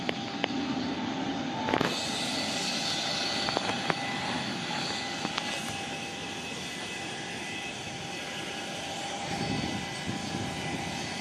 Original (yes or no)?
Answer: yes